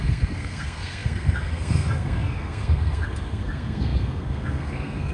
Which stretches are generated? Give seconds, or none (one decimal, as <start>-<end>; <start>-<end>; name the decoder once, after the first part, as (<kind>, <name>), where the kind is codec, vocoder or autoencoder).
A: 0.0-5.1 (codec, SNAC)